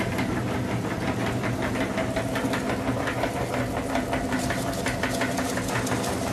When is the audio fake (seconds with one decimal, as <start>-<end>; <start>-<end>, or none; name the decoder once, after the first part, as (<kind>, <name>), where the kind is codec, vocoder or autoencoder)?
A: none